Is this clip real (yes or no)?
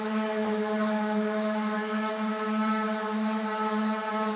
no